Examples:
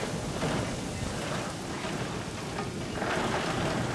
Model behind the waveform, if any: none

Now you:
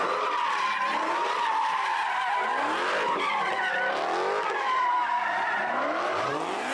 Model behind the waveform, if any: none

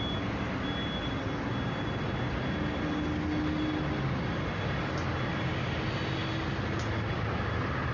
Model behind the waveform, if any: none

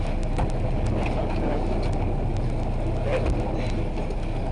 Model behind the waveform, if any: none